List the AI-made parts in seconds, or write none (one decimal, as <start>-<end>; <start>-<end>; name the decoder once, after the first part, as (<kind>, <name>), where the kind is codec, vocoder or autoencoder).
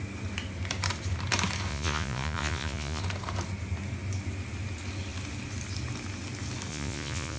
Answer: 1.7-3.0 (vocoder, Vocos); 6.7-7.4